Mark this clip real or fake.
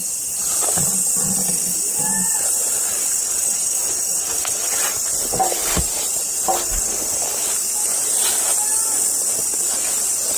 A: real